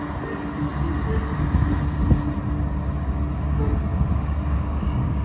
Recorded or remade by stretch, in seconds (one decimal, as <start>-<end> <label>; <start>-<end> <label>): 0.0-3.9 recorded; 3.9-5.2 remade